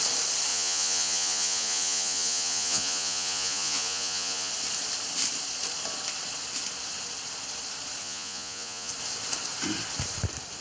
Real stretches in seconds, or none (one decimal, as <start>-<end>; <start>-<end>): 0.0-0.5; 4.5-8.0; 8.9-10.6